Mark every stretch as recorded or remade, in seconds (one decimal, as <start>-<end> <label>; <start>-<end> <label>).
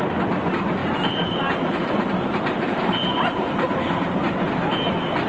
0.0-0.8 recorded; 0.8-3.7 remade; 3.7-5.3 recorded